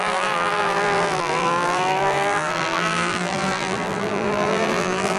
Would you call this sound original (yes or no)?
no